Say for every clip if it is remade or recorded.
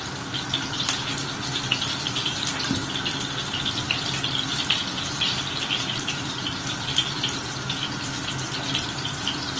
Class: recorded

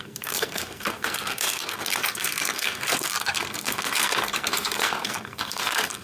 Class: remade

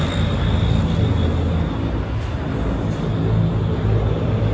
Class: recorded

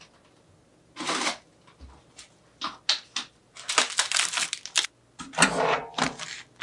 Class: recorded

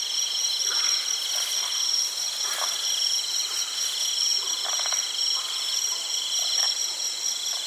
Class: recorded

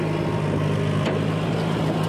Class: recorded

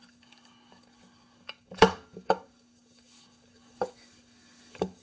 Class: remade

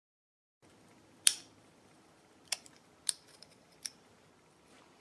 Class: remade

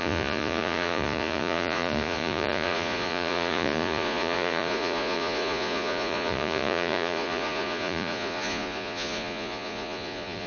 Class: remade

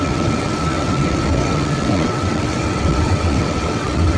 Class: remade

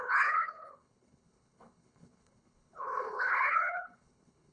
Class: remade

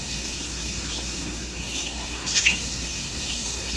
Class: remade